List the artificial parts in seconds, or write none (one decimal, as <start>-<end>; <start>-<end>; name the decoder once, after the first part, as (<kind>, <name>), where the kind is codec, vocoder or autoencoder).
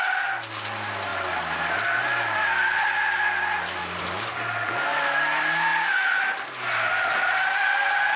none